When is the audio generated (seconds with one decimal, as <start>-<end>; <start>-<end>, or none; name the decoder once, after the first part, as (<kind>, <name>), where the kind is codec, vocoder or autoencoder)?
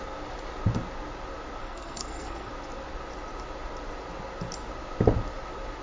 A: 1.6-2.5 (codec, SNAC)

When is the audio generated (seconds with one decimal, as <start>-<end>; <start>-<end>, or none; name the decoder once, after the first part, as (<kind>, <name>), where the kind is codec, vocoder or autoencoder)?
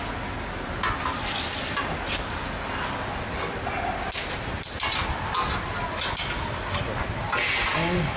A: none